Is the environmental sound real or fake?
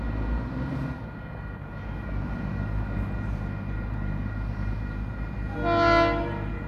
real